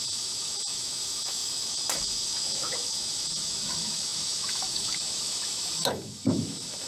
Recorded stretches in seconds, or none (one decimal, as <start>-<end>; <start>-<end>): none